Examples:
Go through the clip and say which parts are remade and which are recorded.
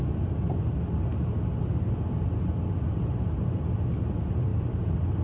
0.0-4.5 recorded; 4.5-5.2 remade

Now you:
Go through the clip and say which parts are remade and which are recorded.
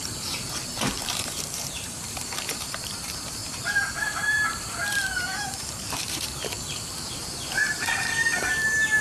0.0-9.0 remade